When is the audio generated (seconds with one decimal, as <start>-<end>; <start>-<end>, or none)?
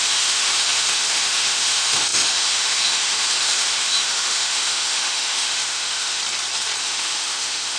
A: 0.0-6.2; 6.8-7.8